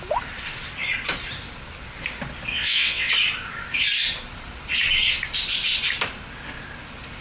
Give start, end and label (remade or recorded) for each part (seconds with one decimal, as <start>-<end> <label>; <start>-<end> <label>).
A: 0.0-2.5 recorded; 2.5-3.1 remade; 3.1-7.2 recorded